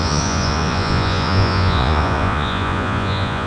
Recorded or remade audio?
remade